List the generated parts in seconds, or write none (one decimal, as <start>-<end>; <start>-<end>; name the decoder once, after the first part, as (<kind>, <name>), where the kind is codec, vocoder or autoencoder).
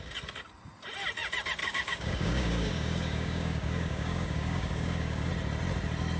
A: 1.6-5.3 (codec, DAC)